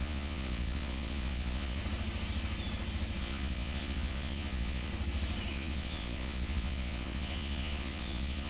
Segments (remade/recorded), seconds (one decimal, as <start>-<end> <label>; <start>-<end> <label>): 0.0-1.8 remade; 1.8-3.2 recorded; 3.2-4.9 remade; 4.9-5.5 recorded; 5.5-8.5 remade